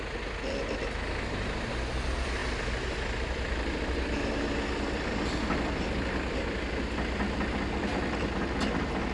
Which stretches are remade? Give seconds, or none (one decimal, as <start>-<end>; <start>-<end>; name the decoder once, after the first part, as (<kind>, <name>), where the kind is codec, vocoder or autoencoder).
none